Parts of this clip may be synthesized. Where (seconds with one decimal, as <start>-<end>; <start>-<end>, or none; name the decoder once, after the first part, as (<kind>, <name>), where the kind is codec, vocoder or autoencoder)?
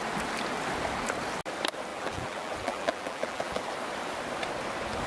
1.9-3.6 (vocoder, BigVGAN v2)